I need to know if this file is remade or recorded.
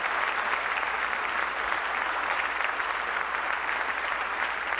remade